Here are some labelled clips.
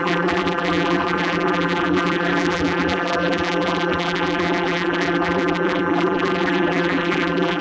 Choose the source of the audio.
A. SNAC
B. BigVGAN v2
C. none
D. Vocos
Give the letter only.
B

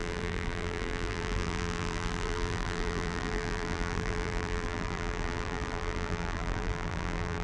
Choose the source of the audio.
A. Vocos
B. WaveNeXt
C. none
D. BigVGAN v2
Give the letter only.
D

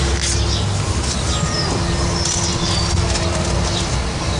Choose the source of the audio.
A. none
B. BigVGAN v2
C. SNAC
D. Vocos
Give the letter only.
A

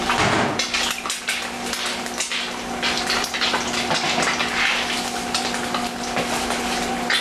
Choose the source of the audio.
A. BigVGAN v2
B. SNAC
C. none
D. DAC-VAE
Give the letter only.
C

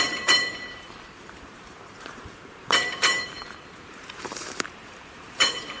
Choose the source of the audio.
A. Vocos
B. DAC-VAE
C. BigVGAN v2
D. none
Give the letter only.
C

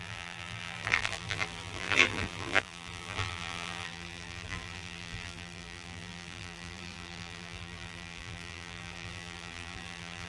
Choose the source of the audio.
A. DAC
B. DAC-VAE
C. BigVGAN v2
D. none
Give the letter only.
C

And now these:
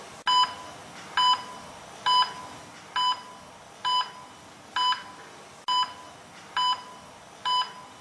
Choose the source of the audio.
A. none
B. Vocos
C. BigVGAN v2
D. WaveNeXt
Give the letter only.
A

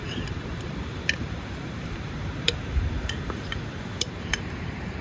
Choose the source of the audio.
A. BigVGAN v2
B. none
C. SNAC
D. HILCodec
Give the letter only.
A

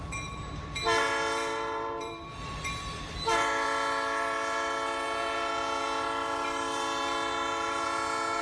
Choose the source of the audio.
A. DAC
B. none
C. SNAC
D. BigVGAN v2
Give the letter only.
D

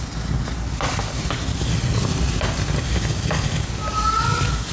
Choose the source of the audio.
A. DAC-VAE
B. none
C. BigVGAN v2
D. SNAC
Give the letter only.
B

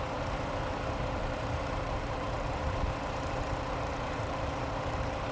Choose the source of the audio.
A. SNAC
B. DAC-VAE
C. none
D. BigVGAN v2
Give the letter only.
D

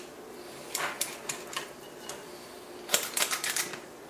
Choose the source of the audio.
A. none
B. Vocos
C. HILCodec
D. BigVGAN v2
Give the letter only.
D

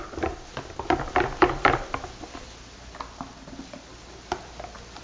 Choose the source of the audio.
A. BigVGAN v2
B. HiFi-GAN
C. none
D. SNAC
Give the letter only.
C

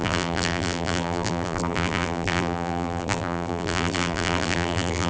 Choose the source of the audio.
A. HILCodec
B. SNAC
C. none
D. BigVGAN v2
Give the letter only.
D